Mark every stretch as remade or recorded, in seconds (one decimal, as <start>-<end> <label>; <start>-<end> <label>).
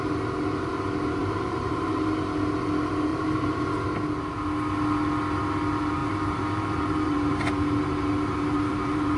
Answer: 0.0-1.2 recorded; 1.2-2.2 remade; 2.2-3.1 recorded; 3.1-3.6 remade; 3.6-6.0 recorded; 6.0-9.2 remade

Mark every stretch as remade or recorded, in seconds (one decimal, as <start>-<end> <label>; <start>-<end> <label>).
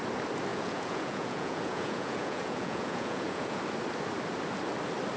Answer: 0.0-0.5 recorded; 0.5-3.6 remade; 3.6-5.2 recorded